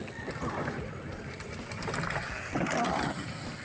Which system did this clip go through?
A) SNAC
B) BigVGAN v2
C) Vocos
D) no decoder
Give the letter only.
B